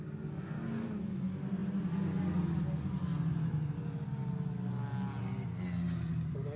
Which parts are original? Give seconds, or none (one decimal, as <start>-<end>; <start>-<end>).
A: 0.0-6.6